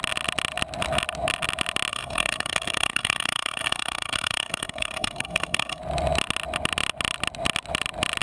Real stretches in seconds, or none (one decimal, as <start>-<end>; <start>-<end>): 0.0-1.9; 5.8-8.2